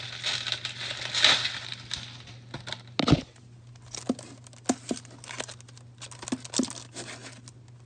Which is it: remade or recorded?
recorded